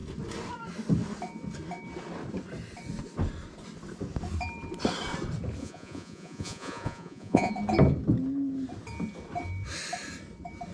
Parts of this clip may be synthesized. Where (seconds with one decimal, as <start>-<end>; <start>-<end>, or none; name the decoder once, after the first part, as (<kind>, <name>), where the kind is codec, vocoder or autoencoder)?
5.6-7.5 (vocoder, Vocos)